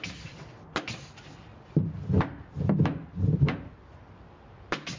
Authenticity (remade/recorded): recorded